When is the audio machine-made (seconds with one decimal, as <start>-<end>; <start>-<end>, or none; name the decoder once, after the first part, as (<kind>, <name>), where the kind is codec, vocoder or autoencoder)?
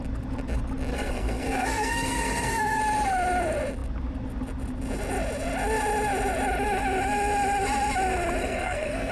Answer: 0.9-2.8 (codec, SNAC); 8.4-9.1